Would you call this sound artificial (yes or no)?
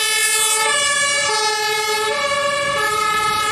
no